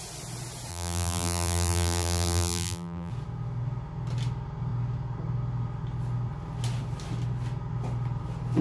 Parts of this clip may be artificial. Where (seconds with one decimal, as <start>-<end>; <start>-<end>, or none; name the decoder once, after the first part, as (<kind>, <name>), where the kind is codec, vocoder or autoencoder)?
0.7-3.1 (vocoder, BigVGAN v2)